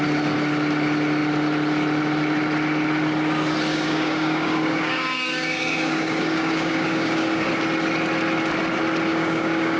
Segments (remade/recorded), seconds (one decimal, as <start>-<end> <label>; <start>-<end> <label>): 0.0-3.7 recorded; 3.7-7.5 remade; 7.5-9.1 recorded; 9.1-9.8 remade